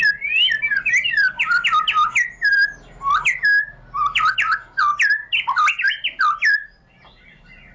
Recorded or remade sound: recorded